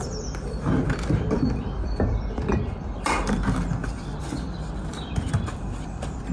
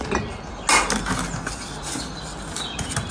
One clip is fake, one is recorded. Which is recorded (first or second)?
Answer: second